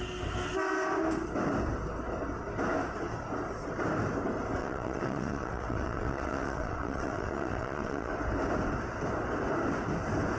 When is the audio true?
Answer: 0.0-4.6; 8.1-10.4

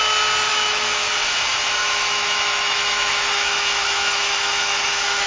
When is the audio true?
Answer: 0.0-0.5; 1.1-1.8

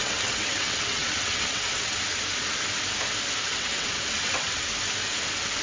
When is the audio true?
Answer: 2.0-3.5; 4.7-5.6

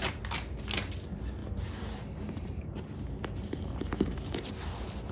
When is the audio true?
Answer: 0.0-1.4; 4.5-5.1

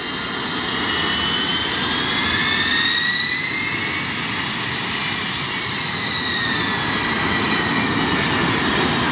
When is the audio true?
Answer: 0.0-9.1